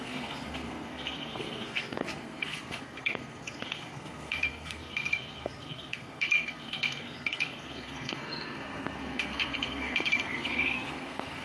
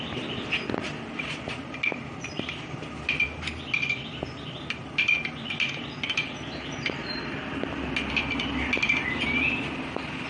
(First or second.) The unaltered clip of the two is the second